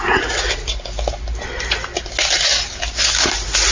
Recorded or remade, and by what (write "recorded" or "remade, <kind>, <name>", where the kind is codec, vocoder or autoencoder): recorded